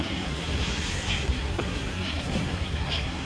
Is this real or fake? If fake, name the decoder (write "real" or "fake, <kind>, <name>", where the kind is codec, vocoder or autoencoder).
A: fake, codec, SNAC